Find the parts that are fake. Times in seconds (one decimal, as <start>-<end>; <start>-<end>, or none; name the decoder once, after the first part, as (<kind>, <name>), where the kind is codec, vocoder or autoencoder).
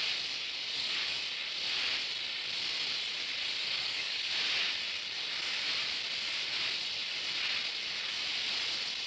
0.6-1.2 (codec, DAC); 3.6-4.3